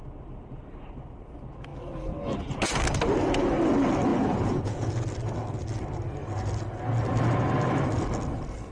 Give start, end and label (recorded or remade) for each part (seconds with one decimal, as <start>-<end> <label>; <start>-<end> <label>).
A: 0.0-4.1 recorded; 4.1-4.9 remade; 4.9-8.7 recorded